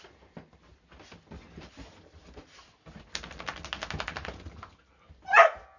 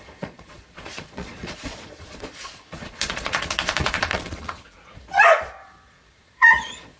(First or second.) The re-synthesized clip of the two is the second